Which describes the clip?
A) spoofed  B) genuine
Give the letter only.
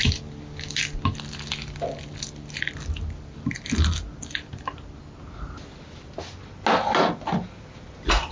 B